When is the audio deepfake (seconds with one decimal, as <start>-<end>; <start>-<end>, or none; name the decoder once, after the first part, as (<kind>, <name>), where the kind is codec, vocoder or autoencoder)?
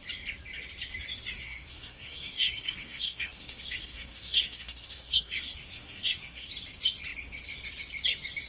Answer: 1.4-6.5 (codec, SNAC)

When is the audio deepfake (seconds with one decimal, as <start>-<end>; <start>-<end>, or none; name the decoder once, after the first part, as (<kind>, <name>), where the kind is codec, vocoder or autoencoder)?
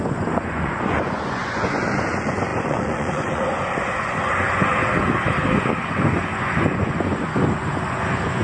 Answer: 0.0-4.8 (vocoder, Vocos); 5.8-8.4